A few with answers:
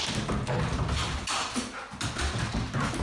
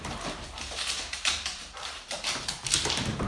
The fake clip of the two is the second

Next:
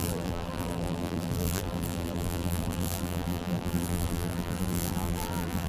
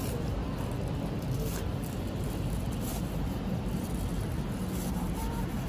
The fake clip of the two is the first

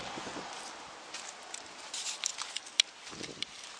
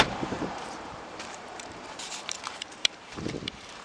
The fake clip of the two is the second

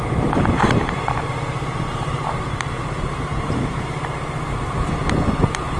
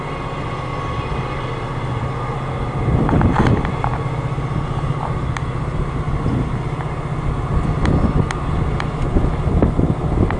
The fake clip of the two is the first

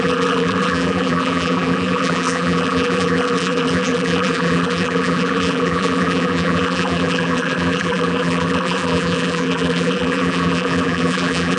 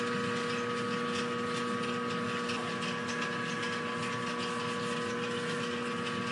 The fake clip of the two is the first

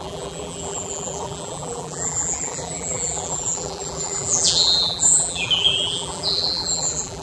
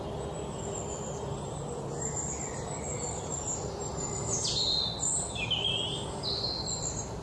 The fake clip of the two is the first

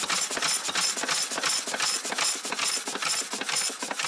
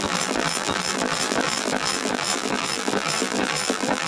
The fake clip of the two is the second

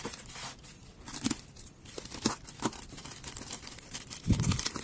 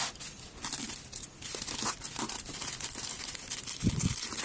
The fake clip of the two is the first